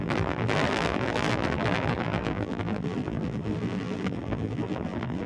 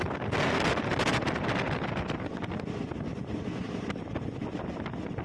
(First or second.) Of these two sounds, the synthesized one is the first